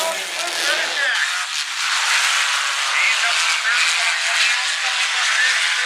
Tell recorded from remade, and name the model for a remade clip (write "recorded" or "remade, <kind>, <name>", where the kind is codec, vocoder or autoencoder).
recorded